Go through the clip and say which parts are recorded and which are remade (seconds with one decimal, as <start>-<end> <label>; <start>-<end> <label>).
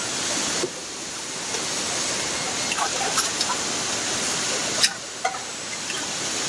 0.0-0.8 recorded; 0.8-1.4 remade; 1.4-2.9 recorded; 2.9-3.7 remade; 3.7-6.5 recorded